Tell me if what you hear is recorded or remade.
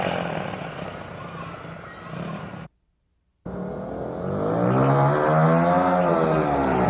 recorded